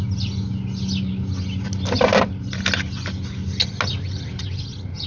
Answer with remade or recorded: recorded